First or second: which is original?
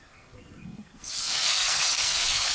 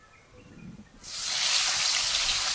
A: second